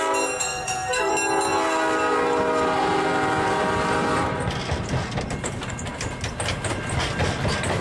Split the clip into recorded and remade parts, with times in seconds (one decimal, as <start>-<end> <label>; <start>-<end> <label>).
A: 0.0-0.4 recorded; 0.4-1.1 remade; 1.1-7.8 recorded